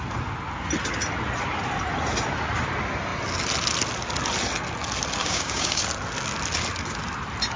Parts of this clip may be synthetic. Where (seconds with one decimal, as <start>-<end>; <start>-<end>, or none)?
5.2-5.8